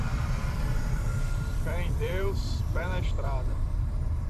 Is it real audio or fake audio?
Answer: fake